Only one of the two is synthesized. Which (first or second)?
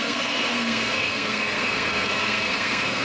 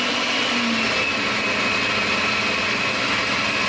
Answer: first